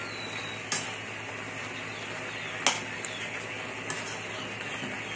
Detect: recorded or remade recorded